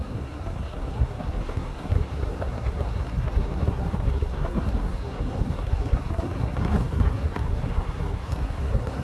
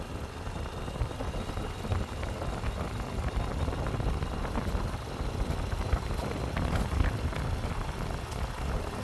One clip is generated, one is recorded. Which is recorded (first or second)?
second